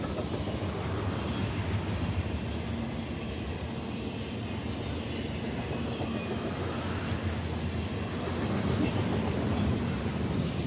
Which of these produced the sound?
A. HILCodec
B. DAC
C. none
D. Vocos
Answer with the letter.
C